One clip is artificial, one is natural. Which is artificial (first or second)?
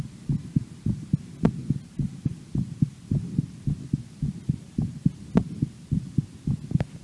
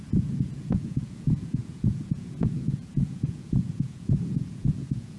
second